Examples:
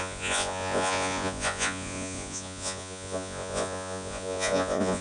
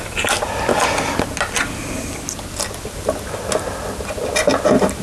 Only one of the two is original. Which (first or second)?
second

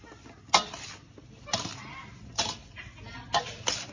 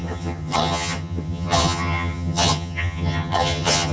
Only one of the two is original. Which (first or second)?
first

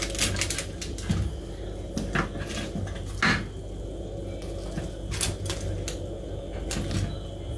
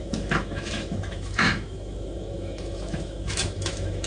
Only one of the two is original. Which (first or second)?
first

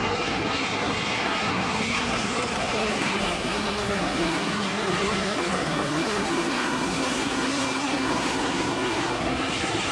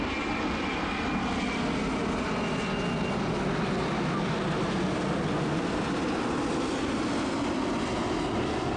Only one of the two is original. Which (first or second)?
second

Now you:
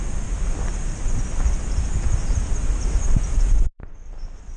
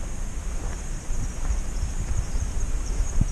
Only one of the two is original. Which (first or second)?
first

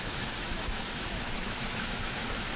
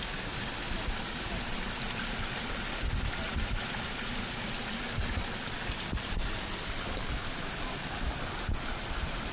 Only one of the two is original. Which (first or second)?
second